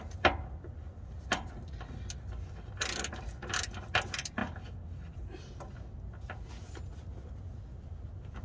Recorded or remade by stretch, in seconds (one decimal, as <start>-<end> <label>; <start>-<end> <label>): 0.0-8.4 recorded